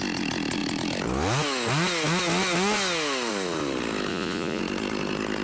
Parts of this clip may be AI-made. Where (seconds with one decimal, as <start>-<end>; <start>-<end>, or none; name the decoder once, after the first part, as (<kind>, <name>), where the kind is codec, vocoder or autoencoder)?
4.1-4.6 (vocoder, Vocos)